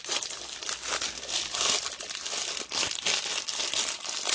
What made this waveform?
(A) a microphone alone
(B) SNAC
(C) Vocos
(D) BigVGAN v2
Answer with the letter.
A